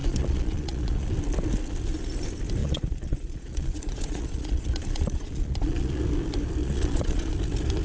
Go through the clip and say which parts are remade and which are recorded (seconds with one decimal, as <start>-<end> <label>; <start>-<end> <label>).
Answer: 0.0-1.1 remade; 1.1-2.6 recorded; 2.6-6.0 remade; 6.0-6.6 recorded; 6.6-7.3 remade; 7.3-7.8 recorded